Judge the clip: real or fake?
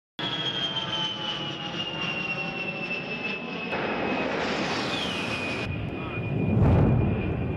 real